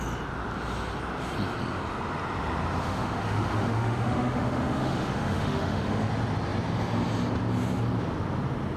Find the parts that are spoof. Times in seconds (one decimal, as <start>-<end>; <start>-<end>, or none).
2.8-6.1